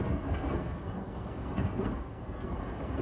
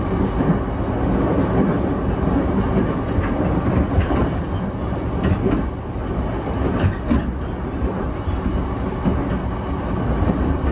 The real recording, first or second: second